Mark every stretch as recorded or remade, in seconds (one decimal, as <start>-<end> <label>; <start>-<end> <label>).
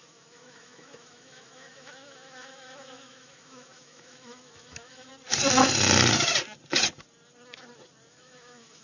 0.0-5.1 remade; 5.1-8.1 recorded; 8.1-8.8 remade